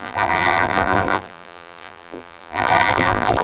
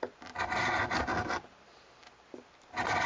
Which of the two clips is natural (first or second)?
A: second